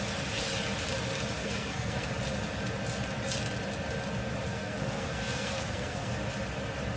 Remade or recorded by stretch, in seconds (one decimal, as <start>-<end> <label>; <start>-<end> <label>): 0.0-1.4 recorded; 1.4-2.1 remade; 2.1-4.5 recorded; 4.5-6.1 remade; 6.1-7.0 recorded